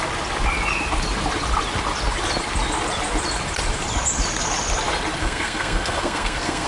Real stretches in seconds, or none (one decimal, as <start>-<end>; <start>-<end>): 0.0-5.2